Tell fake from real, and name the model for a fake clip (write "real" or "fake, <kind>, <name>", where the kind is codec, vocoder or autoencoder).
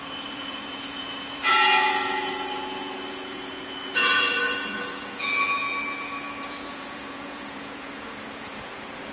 fake, vocoder, Vocos